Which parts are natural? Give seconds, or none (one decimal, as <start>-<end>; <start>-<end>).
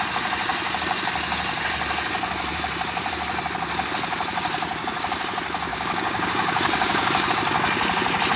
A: 0.0-5.7; 7.3-8.4